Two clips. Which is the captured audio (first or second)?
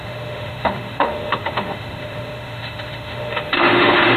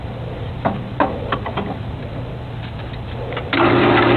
second